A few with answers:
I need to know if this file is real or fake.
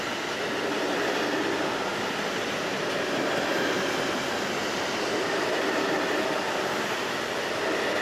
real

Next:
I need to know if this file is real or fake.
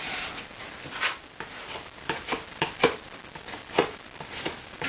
real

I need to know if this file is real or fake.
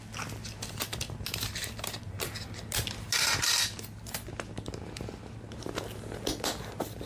real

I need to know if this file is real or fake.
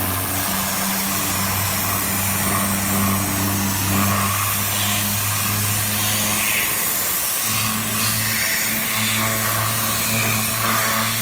real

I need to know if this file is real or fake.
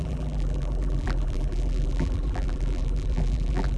fake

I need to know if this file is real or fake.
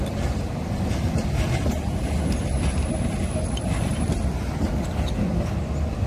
real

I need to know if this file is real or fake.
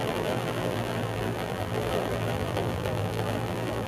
fake